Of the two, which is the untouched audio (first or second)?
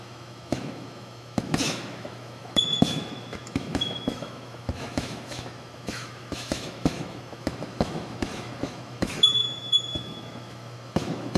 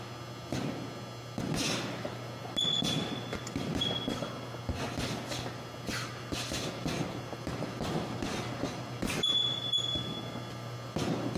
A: second